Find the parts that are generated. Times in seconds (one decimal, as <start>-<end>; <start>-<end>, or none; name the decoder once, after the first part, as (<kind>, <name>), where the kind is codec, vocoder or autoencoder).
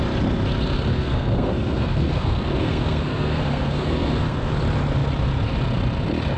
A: 0.9-4.5 (codec, SNAC)